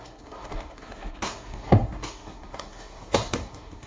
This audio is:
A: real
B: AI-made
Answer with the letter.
B